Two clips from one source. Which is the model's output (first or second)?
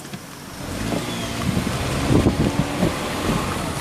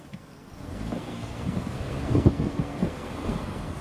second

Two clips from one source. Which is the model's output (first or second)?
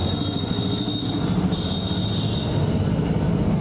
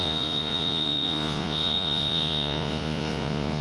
second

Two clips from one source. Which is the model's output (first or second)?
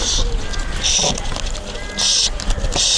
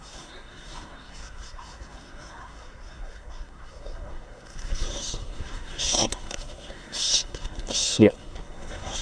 second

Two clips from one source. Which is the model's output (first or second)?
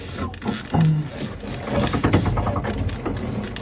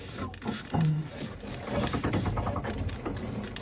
second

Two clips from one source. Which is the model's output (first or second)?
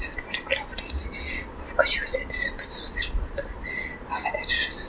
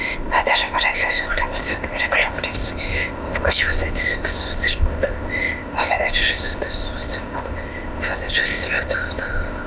second